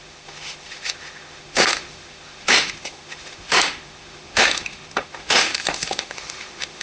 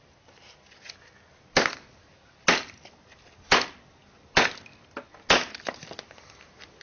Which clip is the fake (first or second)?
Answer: first